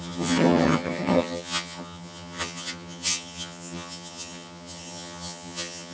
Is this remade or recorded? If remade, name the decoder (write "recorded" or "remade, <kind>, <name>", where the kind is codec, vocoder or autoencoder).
remade, vocoder, HiFi-GAN